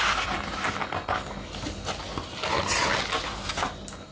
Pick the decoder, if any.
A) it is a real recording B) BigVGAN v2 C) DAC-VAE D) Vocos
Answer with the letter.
A